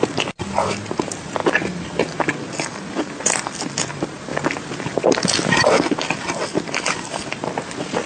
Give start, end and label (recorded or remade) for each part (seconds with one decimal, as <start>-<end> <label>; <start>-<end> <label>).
0.0-8.1 recorded